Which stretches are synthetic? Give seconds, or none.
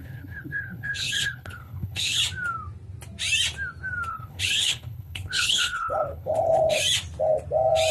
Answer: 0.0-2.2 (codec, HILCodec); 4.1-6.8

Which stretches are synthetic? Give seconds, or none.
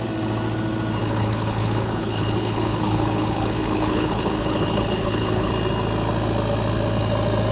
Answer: 1.0-5.5 (codec, HILCodec)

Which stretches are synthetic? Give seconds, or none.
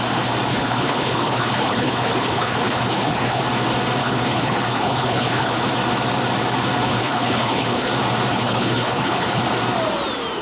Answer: 0.5-3.4 (codec, HILCodec); 4.0-5.7; 6.9-7.9; 8.3-9.4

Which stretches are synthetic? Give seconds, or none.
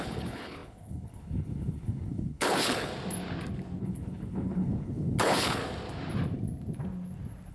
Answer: 0.0-2.9 (codec, HILCodec); 3.8-5.6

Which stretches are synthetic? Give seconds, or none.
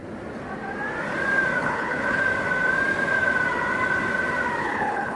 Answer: 1.6-2.2 (codec, HILCodec); 4.6-5.2